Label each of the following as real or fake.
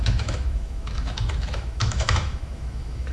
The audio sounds fake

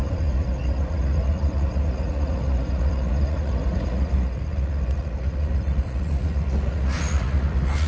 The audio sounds fake